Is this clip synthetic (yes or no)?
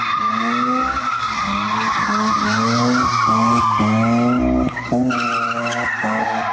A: no